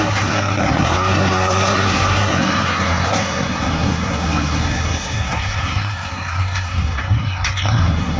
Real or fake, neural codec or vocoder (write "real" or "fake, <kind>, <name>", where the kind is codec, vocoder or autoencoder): fake, codec, SNAC